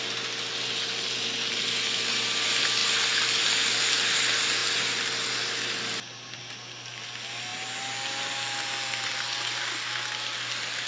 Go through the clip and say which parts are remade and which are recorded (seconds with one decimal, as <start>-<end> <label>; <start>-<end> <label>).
0.0-10.9 recorded